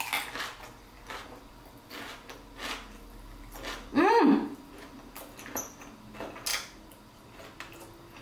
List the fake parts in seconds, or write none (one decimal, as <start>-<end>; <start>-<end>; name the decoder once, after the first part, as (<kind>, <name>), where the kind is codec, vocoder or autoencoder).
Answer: none

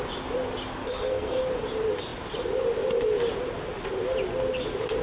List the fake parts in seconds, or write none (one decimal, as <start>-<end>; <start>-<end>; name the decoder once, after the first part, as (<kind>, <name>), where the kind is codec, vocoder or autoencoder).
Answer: 0.8-1.4 (codec, SNAC)